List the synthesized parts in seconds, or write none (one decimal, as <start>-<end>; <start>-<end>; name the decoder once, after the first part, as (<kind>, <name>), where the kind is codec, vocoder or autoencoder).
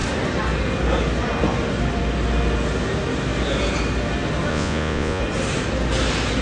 4.5-5.2 (vocoder, Vocos)